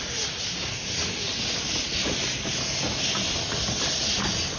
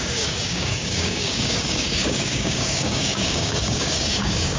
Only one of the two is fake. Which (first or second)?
second